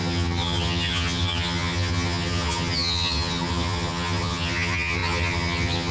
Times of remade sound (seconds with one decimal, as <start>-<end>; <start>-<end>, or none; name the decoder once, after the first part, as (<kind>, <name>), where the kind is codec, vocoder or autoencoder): 0.0-5.9 (vocoder, HiFi-GAN)